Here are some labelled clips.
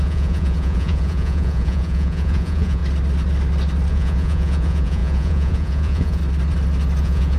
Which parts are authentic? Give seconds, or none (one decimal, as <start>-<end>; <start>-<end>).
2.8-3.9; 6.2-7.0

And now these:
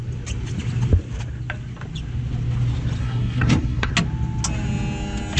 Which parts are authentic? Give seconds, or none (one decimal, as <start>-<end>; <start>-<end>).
0.0-3.0; 3.9-5.4

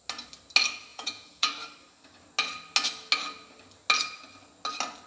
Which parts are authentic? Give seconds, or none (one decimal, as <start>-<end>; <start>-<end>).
0.0-0.9; 1.5-5.1

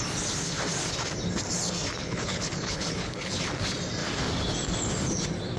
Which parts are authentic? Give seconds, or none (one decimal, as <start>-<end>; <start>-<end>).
0.0-2.0; 3.4-5.6

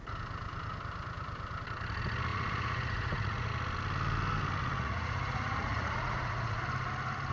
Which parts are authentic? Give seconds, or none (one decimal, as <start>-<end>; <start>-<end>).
0.0-2.3; 3.5-4.6; 6.6-7.3

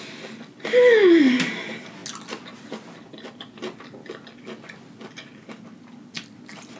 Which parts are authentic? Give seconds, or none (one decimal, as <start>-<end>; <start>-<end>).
0.0-6.8

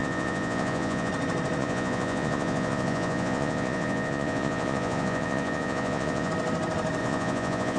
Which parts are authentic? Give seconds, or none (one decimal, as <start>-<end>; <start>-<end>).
1.1-1.6; 6.3-7.0